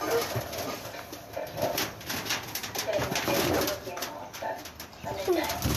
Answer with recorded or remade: recorded